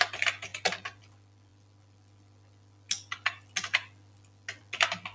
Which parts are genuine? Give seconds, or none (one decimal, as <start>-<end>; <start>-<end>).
0.0-5.1